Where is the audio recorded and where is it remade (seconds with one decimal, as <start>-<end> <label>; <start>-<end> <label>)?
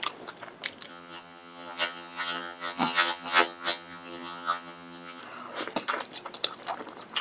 0.0-0.9 recorded; 0.9-5.2 remade; 5.2-7.2 recorded